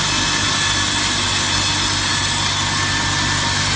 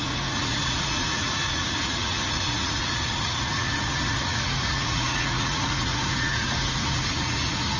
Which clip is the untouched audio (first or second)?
first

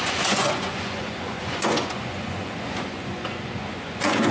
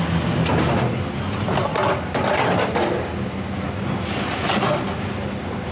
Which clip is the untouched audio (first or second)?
second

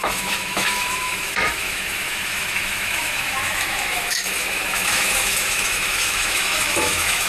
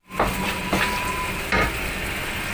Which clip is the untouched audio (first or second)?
second